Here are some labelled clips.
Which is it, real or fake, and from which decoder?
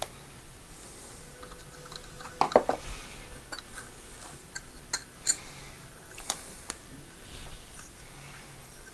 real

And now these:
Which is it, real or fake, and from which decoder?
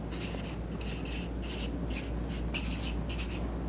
real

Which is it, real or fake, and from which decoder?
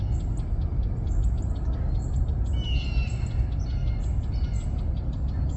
real